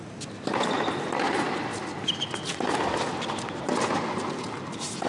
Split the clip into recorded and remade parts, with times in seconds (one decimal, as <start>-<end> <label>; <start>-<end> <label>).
0.0-5.1 recorded